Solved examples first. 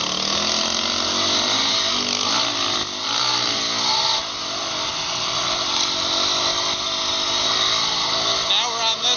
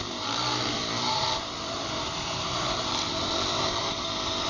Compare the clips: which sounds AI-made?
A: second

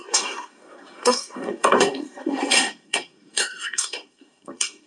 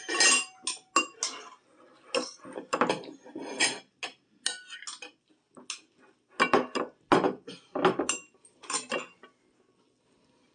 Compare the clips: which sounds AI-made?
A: first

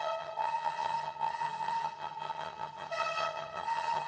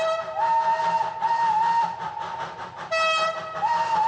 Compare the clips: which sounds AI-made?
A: first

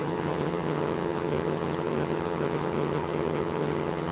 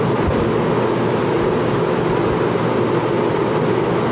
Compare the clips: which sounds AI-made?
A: first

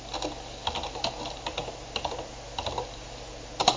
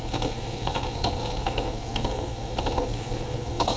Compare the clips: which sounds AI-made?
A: second